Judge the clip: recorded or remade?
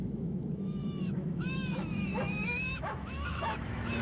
remade